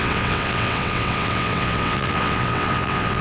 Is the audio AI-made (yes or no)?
yes